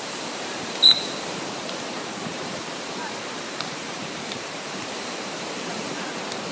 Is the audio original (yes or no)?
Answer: no